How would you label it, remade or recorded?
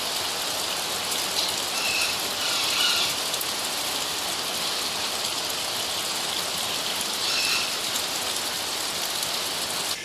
recorded